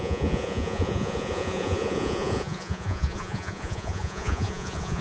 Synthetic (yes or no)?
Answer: yes